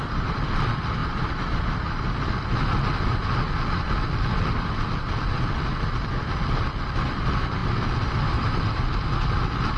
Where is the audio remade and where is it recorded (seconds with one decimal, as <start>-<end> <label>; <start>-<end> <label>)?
0.0-9.8 recorded